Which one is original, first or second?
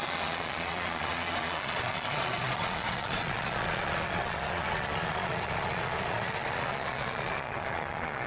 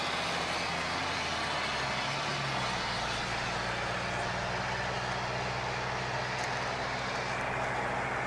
second